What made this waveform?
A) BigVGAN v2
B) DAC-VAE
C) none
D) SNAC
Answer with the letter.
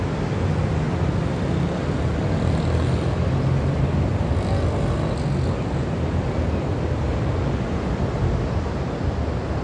C